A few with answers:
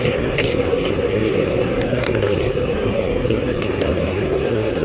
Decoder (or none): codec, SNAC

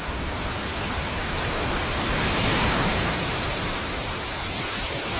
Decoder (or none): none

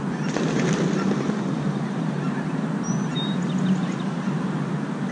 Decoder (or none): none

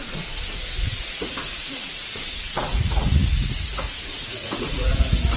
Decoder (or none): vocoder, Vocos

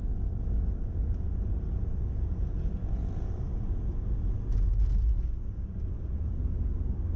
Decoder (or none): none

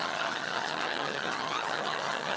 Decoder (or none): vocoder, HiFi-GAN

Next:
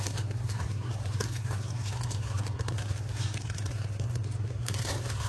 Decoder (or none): codec, SNAC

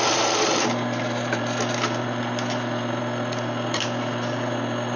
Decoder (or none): none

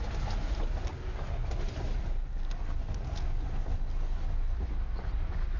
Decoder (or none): none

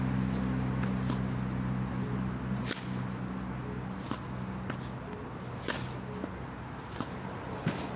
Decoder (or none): none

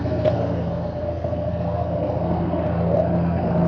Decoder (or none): codec, SNAC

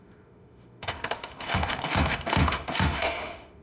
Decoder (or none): autoencoder, DAC-VAE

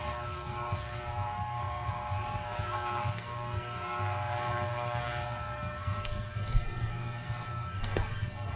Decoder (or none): codec, SNAC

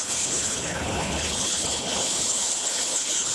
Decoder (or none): codec, HILCodec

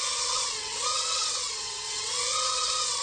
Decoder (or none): vocoder, WaveNeXt